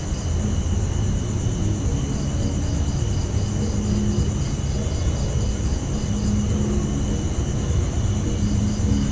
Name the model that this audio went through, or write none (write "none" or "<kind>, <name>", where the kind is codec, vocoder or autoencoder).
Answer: none